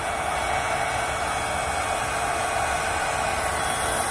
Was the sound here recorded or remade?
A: recorded